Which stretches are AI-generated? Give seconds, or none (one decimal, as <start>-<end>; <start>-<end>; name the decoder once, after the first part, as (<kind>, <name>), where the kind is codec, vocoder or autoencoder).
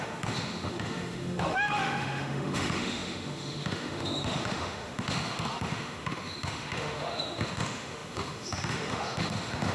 0.0-9.7 (autoencoder, DAC-VAE)